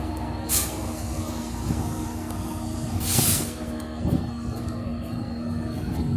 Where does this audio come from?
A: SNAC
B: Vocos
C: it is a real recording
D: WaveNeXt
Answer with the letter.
A